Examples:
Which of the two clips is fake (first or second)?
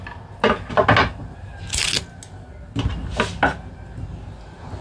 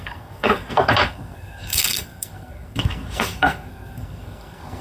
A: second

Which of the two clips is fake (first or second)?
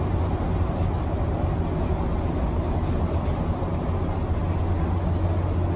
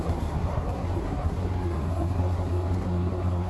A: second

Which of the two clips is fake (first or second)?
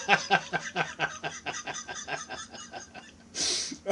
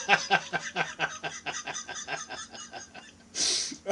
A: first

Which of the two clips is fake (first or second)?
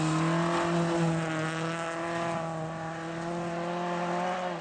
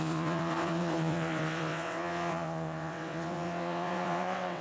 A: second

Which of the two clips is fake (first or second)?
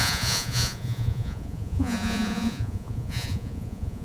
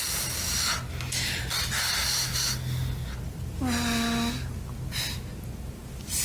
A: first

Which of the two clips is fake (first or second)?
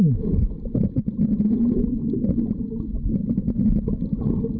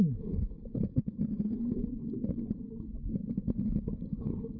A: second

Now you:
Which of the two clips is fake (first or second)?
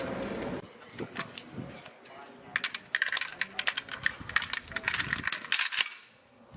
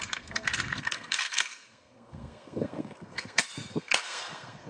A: second